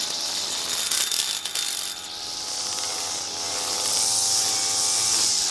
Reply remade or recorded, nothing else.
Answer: recorded